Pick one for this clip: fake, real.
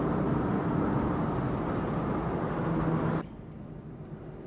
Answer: real